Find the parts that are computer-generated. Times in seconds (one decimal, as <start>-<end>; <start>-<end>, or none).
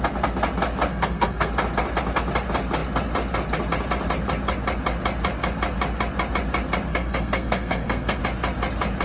0.9-1.5; 6.9-8.2